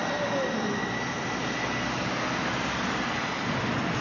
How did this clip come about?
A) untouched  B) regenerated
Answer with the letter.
A